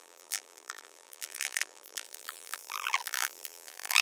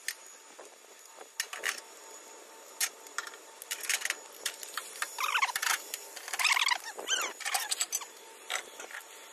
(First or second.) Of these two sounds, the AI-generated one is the first